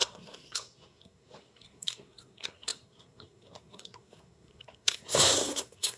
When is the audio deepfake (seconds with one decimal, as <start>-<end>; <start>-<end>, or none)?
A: 0.0-6.0